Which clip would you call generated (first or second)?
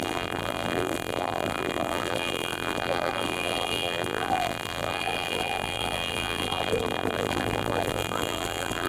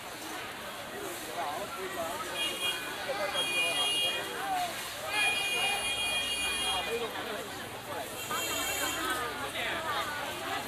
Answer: first